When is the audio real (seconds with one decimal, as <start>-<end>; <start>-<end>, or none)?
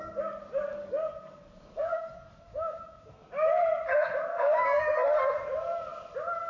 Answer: 0.0-0.7; 3.2-4.3; 4.8-6.5